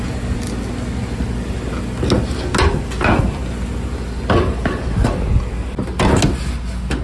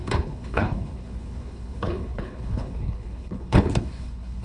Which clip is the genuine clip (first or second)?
first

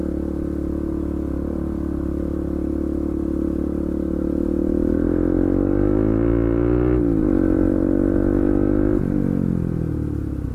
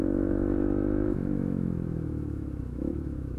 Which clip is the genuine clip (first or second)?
first